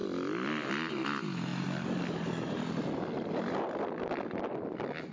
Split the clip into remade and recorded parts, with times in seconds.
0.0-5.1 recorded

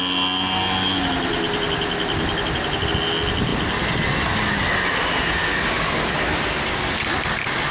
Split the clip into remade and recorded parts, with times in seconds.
0.0-7.7 recorded

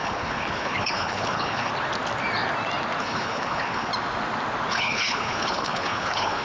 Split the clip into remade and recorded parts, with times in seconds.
0.0-1.7 remade; 1.7-3.0 recorded; 3.0-3.9 remade; 3.9-4.7 recorded; 4.7-6.4 remade

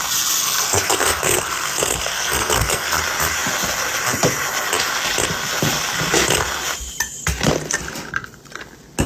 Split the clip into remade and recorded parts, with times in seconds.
0.0-0.4 recorded; 0.4-3.0 remade; 3.0-9.1 recorded